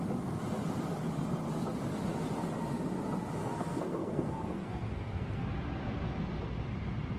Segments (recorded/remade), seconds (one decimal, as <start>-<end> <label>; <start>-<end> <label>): 0.0-3.4 recorded; 3.4-5.4 remade; 5.4-7.2 recorded